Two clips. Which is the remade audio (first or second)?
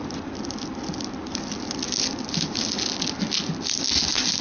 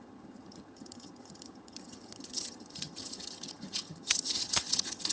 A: second